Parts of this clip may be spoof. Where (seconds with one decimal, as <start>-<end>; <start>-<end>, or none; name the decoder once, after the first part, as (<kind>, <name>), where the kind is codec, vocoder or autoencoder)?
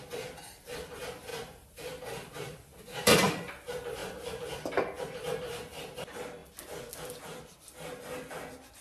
1.3-3.5 (vocoder, BigVGAN v2)